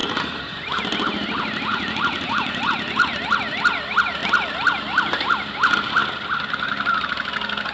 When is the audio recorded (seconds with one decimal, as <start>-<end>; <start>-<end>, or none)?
0.8-1.7; 2.7-7.7